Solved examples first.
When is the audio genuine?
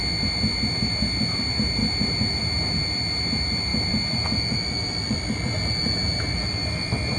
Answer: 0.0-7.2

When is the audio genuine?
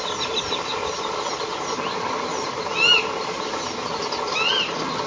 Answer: 0.0-5.1